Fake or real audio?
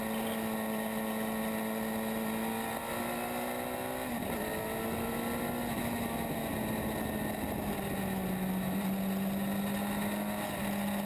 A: real